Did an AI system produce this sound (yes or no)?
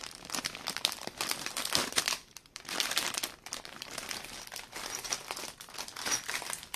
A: yes